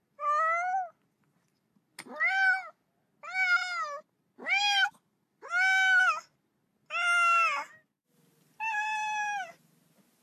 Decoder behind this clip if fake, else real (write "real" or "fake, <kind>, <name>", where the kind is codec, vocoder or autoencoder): real